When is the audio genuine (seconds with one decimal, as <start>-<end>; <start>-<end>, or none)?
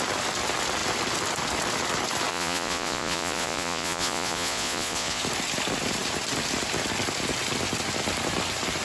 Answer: 0.0-2.3; 5.2-8.8